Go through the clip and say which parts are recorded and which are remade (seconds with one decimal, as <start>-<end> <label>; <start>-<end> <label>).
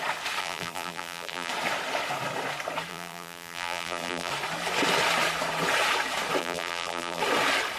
0.0-0.4 recorded; 0.4-1.5 remade; 1.5-2.9 recorded; 2.9-4.3 remade; 4.3-6.4 recorded; 6.4-7.2 remade; 7.2-7.8 recorded